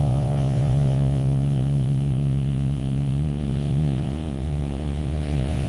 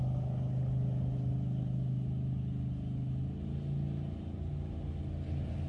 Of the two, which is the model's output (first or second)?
first